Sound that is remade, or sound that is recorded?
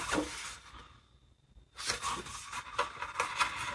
recorded